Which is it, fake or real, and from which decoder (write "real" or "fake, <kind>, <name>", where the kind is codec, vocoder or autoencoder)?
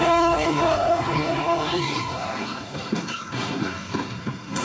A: fake, codec, SNAC